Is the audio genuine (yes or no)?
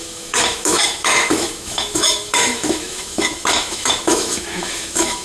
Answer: no